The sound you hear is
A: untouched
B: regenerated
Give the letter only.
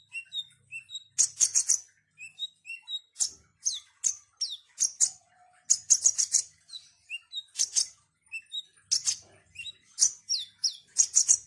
A